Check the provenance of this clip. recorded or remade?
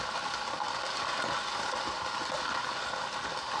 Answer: recorded